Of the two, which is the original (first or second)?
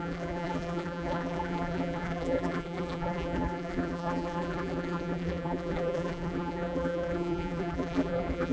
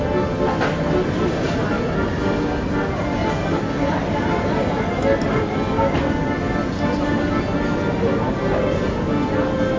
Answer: second